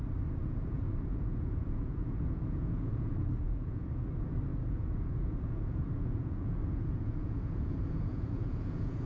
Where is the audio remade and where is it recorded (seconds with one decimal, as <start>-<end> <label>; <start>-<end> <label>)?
0.0-0.4 recorded; 0.4-3.9 remade; 3.9-4.5 recorded; 4.5-9.1 remade